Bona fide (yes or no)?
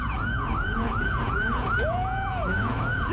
no